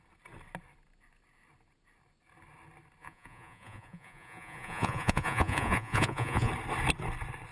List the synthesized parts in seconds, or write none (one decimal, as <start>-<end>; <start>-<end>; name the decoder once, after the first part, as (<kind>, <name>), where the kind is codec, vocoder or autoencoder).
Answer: 3.0-6.5 (vocoder, Vocos)